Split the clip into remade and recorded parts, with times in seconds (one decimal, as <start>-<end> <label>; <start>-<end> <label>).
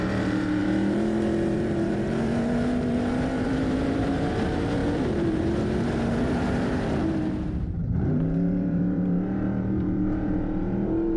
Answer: 0.0-11.2 remade